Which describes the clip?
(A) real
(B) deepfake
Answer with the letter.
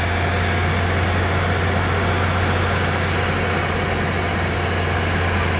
A